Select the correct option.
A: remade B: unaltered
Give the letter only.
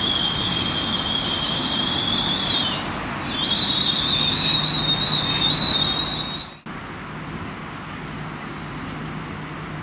B